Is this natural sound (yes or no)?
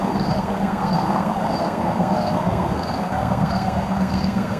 no